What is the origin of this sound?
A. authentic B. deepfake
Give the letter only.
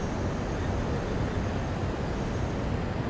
A